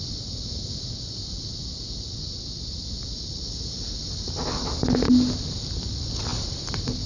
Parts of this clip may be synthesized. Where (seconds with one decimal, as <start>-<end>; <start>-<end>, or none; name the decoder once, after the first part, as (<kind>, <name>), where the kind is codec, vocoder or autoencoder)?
none